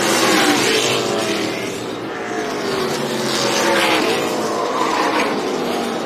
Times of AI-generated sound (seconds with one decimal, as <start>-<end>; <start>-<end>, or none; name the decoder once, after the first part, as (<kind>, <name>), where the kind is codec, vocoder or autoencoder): none